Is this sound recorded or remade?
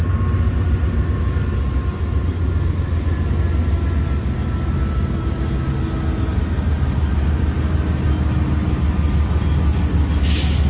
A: recorded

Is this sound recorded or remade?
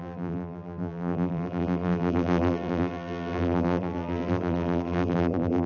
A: remade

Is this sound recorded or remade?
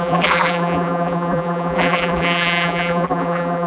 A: remade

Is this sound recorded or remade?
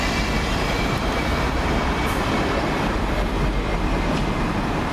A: remade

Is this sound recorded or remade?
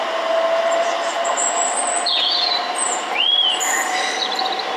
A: recorded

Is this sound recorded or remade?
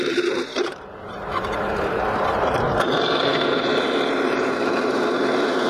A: remade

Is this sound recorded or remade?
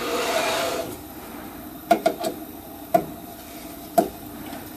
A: remade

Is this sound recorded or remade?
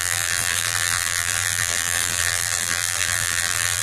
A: remade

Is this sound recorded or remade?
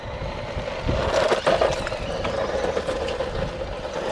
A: recorded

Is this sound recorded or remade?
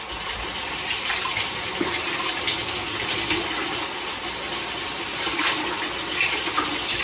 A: recorded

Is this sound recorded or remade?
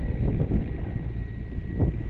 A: recorded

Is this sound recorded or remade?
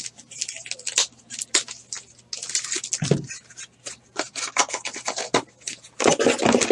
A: recorded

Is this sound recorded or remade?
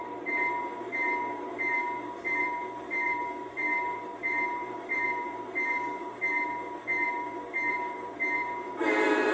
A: remade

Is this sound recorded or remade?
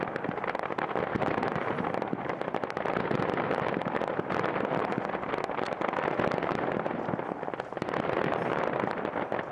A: recorded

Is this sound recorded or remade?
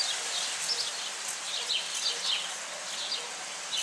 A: recorded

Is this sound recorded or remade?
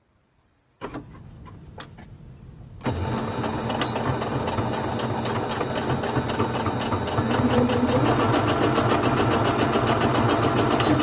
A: recorded